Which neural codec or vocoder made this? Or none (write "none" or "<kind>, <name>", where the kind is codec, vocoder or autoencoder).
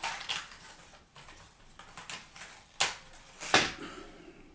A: none